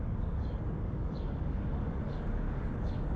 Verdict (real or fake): fake